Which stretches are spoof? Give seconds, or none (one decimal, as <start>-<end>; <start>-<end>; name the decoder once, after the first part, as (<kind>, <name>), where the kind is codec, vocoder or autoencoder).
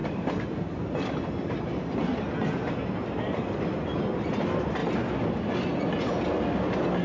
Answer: none